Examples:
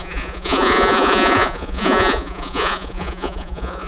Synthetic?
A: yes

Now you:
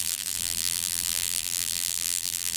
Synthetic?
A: yes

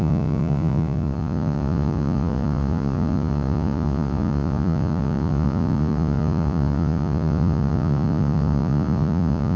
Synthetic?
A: yes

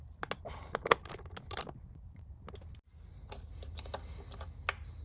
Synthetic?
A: no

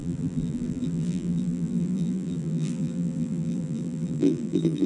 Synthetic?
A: yes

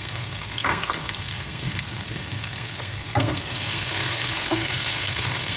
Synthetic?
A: yes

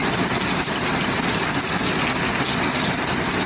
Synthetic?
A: no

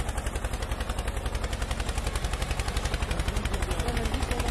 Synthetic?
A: no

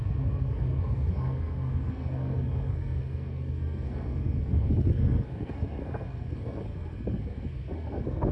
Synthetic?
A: yes